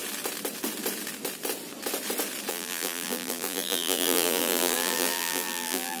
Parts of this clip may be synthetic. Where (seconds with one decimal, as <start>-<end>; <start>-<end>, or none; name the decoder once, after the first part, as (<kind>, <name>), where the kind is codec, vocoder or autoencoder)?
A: 2.5-6.0 (vocoder, BigVGAN v2)